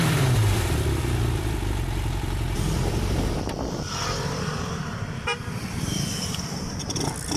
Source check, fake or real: fake